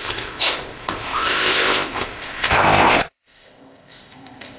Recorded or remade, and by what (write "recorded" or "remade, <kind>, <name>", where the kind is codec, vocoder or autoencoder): remade, codec, ZipCodec